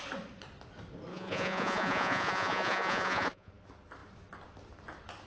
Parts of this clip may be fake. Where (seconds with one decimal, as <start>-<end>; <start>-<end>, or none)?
1.1-3.5